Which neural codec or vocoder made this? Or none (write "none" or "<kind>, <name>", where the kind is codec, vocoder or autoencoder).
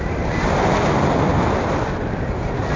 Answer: none